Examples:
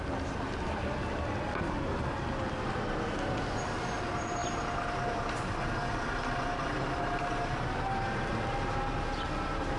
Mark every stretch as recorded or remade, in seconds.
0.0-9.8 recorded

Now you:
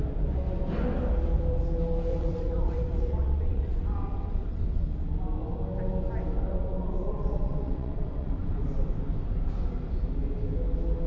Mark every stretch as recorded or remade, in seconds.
0.0-2.1 recorded; 2.1-4.8 remade; 4.8-6.5 recorded; 6.5-8.9 remade; 8.9-11.1 recorded

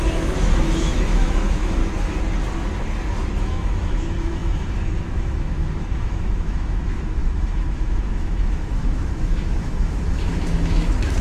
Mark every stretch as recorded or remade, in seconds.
0.0-1.8 remade; 1.8-3.4 recorded; 3.4-11.2 remade

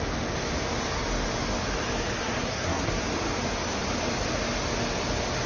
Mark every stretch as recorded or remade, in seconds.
0.0-2.2 recorded; 2.2-3.0 remade; 3.0-5.5 recorded

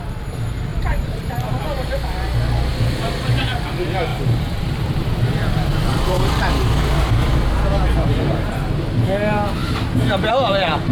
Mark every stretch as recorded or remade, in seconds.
0.0-0.7 recorded; 0.7-1.6 remade; 1.6-2.7 recorded; 2.7-3.4 remade; 3.4-4.1 recorded; 4.1-8.9 remade; 8.9-10.9 recorded